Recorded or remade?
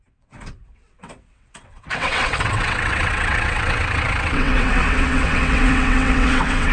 remade